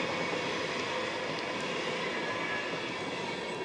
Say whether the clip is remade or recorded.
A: recorded